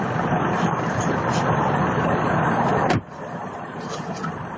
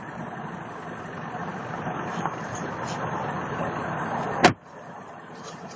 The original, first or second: second